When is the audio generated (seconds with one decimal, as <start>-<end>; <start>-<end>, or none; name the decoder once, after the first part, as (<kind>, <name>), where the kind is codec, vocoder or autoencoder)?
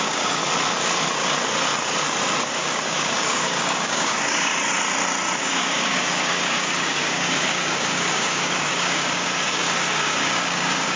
0.0-0.4 (codec, DAC); 2.5-4.5; 5.4-11.0